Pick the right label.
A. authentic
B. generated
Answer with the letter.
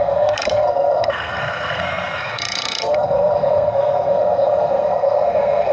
B